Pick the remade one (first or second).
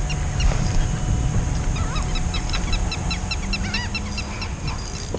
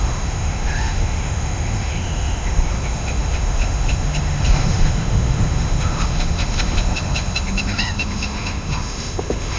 second